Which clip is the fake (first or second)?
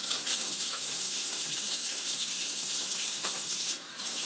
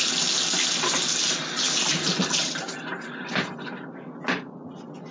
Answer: first